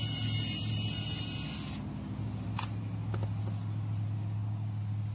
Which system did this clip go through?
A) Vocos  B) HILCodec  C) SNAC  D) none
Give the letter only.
D